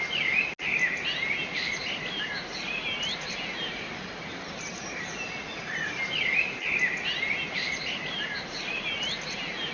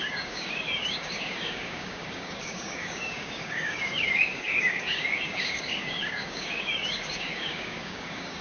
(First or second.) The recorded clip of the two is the first